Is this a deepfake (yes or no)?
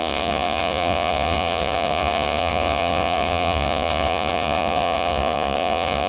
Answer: yes